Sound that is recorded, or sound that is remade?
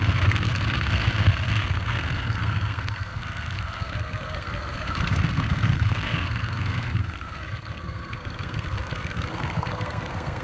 remade